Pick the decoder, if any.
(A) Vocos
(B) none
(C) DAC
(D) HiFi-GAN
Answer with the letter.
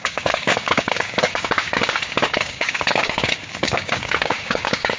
C